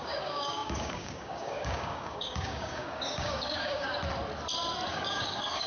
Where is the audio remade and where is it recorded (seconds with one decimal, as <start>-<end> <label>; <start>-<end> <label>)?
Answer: 0.0-3.9 remade; 3.9-4.9 recorded; 4.9-5.7 remade